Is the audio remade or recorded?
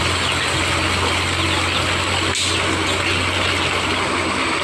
recorded